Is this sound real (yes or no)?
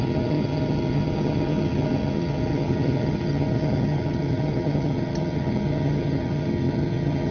no